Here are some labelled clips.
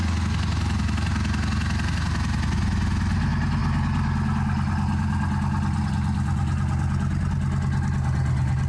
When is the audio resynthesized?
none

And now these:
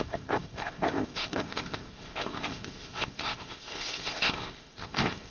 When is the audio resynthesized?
0.0-5.3 (codec, ZipCodec)

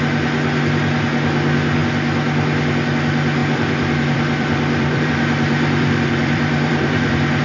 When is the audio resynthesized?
3.4-7.4 (vocoder, BigVGAN v2)